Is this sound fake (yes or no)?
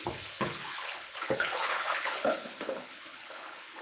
yes